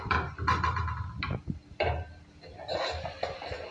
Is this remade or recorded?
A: recorded